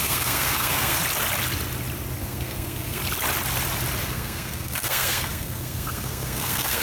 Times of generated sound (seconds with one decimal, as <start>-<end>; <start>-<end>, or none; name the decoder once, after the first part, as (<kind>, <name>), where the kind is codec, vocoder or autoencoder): 0.0-1.0 (codec, SNAC); 2.2-3.0; 4.0-6.8